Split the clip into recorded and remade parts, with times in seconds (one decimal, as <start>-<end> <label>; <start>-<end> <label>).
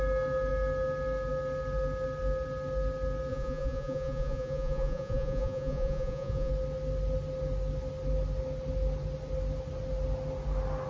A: 0.0-3.3 recorded; 3.3-6.5 remade; 6.5-10.9 recorded